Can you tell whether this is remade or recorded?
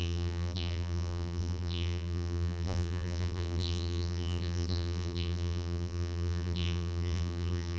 remade